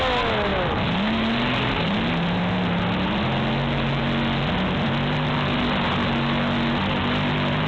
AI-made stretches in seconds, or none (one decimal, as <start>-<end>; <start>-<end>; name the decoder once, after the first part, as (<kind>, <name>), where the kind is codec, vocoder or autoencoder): none